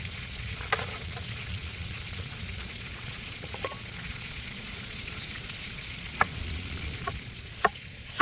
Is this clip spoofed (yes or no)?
yes